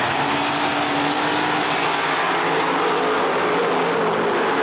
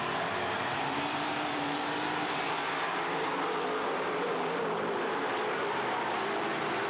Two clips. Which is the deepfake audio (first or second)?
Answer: second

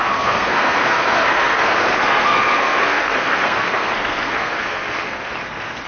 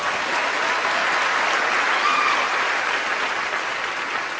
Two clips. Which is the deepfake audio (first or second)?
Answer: first